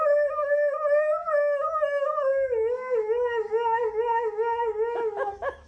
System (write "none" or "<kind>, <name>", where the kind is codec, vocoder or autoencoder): autoencoder, DAC-VAE